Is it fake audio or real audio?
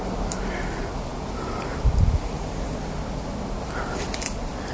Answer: fake